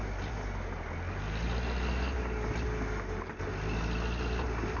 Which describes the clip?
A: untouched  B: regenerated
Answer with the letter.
A